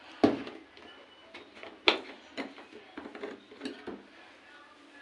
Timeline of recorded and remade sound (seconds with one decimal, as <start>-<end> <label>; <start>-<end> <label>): 0.0-5.0 recorded